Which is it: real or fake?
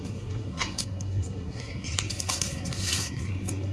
fake